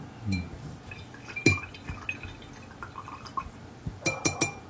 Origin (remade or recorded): recorded